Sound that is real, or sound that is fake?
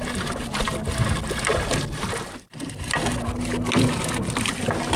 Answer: real